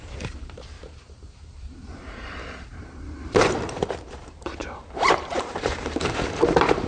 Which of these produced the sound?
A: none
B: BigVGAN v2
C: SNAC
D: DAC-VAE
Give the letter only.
B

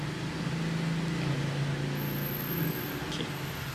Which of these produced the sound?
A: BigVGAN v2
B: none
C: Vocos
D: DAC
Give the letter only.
B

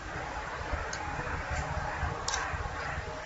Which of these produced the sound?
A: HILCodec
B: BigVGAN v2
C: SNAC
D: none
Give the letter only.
D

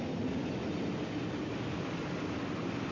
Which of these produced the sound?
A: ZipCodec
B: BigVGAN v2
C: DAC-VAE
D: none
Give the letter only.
D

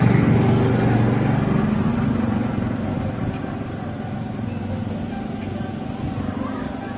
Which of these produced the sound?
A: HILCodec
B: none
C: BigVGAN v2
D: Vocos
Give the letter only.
B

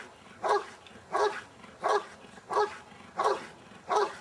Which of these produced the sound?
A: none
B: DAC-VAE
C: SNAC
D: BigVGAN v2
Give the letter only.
A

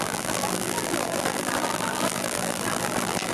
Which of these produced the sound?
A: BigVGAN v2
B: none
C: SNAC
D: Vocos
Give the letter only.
A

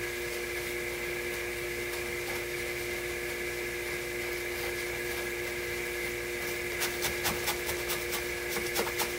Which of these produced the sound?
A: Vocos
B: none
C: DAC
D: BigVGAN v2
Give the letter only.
B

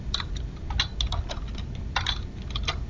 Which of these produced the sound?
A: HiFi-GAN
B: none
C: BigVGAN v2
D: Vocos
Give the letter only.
B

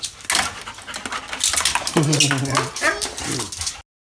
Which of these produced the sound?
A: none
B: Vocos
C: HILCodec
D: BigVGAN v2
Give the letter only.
A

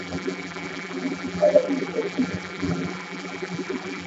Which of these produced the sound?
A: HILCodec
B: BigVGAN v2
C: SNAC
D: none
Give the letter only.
B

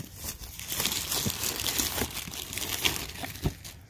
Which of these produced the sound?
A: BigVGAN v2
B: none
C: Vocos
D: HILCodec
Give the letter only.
B